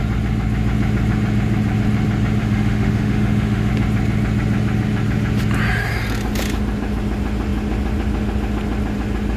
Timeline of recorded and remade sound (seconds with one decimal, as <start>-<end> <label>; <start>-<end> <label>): 0.0-2.4 recorded; 2.4-3.7 remade; 3.7-9.4 recorded